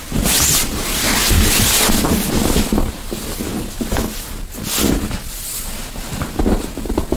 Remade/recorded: recorded